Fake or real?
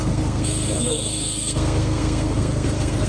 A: fake